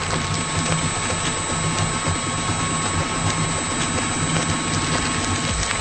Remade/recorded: recorded